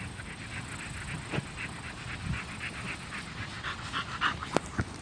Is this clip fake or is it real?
real